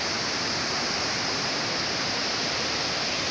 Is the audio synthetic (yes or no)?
no